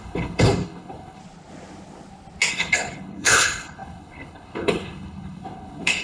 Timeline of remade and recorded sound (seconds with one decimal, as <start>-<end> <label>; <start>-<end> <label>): 0.0-1.2 remade; 1.2-2.5 recorded; 2.5-6.0 remade

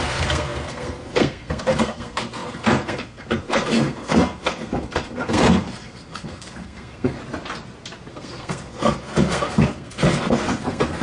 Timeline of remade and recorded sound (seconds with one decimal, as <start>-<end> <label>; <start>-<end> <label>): 0.0-7.2 remade; 7.2-8.1 recorded; 8.1-11.0 remade

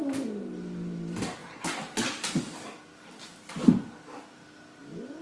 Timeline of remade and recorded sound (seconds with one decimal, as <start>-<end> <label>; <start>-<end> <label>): 0.0-5.2 recorded

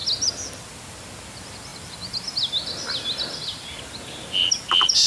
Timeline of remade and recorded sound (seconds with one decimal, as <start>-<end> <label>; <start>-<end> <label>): 0.0-5.1 recorded

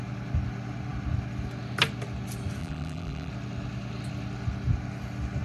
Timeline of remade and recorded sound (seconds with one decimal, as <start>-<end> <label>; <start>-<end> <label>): 0.0-2.6 recorded; 2.6-3.3 remade; 3.3-5.4 recorded

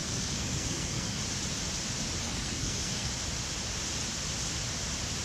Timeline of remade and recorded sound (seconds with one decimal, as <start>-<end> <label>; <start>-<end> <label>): 0.0-1.2 remade; 1.2-2.2 recorded; 2.2-3.1 remade; 3.1-5.2 recorded